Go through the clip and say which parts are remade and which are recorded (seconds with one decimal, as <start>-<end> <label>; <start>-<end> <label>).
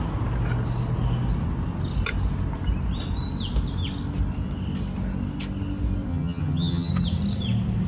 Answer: 0.0-6.1 recorded; 6.1-6.9 remade; 6.9-7.9 recorded